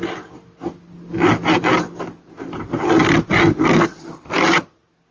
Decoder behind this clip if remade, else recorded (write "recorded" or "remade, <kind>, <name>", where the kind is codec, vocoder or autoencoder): recorded